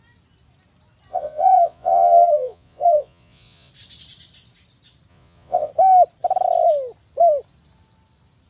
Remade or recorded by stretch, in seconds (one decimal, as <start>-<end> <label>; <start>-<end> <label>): 0.0-1.1 recorded; 1.1-3.7 remade; 3.7-5.1 recorded; 5.1-5.7 remade; 5.7-8.5 recorded